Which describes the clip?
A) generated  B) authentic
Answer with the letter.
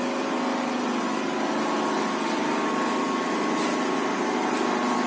B